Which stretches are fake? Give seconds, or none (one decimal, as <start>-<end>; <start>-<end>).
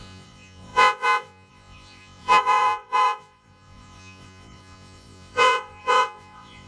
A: 0.0-6.7